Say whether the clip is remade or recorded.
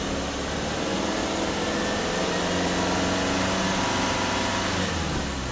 recorded